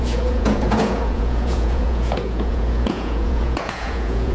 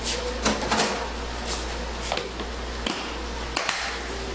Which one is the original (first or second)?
second